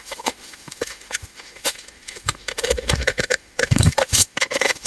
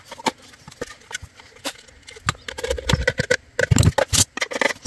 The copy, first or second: first